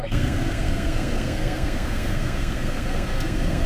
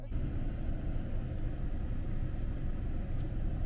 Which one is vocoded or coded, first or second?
first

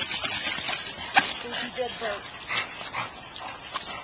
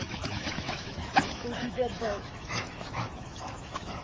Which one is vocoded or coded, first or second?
second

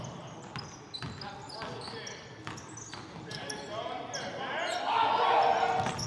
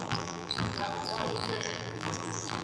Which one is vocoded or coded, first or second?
second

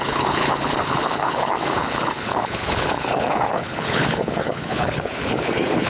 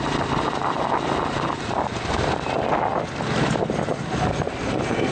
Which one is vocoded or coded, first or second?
first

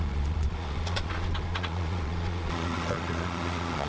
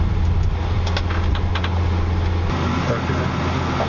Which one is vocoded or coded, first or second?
first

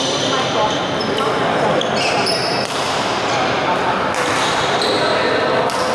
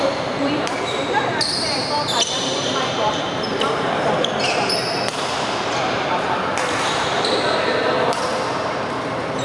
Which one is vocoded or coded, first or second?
second